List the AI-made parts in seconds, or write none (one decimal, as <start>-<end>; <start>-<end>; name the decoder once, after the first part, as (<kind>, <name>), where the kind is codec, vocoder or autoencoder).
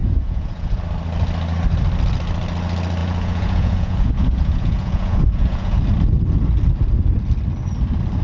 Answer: 0.0-0.8 (vocoder, Vocos); 3.0-5.8